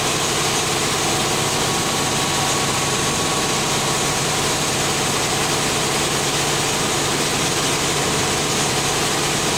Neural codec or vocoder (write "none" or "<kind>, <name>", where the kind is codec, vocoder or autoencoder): none